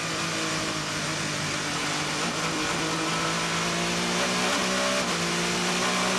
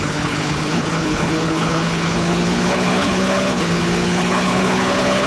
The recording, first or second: first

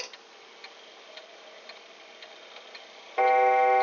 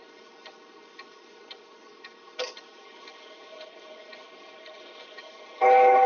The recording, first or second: first